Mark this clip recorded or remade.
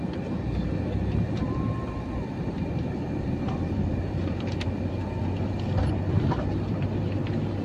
remade